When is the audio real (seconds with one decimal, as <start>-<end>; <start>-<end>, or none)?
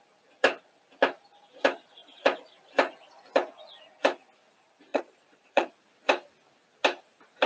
0.0-4.9; 5.7-7.5